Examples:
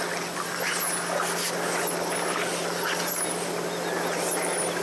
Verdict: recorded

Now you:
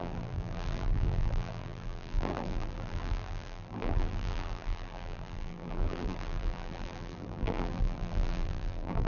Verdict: remade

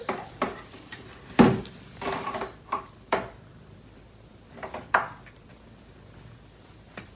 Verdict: remade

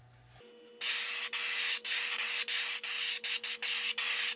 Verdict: recorded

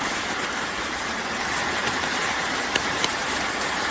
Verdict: remade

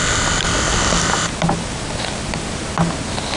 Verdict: recorded